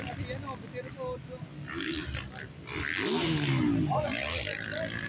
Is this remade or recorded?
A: recorded